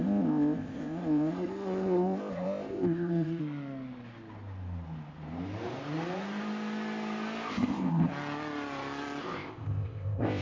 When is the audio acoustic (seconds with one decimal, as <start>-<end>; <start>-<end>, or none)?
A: 3.4-7.5; 8.1-9.2